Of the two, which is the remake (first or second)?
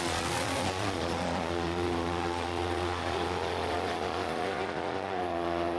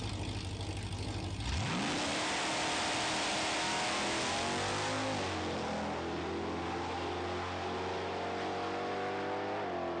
first